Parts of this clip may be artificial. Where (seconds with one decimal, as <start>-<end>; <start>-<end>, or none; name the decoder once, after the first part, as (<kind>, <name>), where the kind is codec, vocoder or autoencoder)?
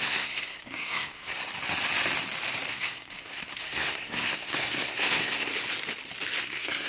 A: 0.0-1.4 (codec, SNAC); 2.7-5.5; 6.4-6.9